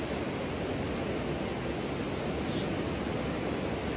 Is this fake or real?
real